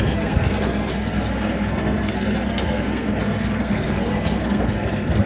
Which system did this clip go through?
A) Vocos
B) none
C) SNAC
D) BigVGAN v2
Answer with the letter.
C